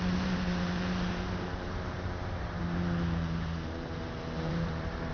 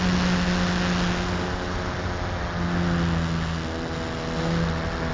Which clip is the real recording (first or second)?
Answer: second